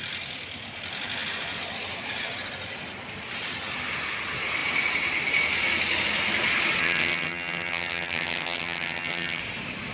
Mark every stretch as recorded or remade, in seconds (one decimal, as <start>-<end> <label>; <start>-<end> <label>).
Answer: 0.0-6.8 recorded; 6.8-9.4 remade; 9.4-9.9 recorded